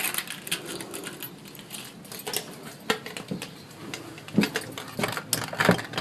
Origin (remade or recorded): recorded